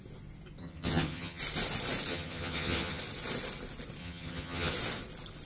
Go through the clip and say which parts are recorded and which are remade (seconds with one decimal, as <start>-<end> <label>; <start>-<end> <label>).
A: 0.0-0.6 recorded; 0.6-1.4 remade; 1.4-2.1 recorded; 2.1-3.0 remade; 3.0-4.0 recorded; 4.0-4.7 remade; 4.7-5.5 recorded